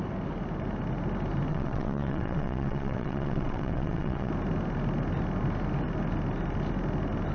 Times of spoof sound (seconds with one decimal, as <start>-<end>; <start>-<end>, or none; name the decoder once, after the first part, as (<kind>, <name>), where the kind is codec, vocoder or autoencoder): 1.5-4.3 (vocoder, WaveNeXt)